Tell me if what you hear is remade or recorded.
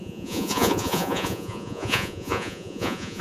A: remade